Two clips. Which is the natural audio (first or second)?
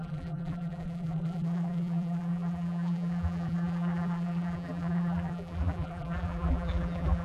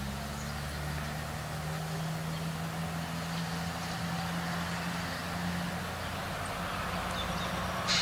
second